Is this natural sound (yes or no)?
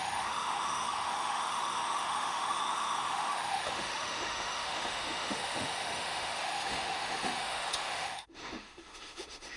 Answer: no